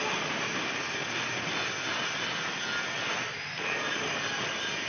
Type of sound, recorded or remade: recorded